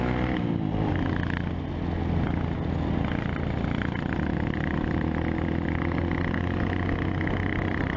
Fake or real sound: real